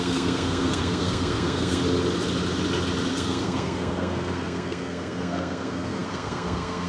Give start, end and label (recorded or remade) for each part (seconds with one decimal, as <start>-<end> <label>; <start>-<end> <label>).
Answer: 0.0-1.8 remade; 1.8-3.1 recorded; 3.1-6.9 remade